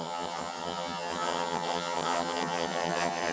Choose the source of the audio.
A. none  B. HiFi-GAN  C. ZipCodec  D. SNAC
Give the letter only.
B